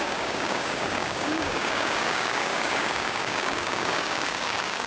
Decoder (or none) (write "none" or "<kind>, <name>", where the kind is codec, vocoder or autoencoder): codec, DAC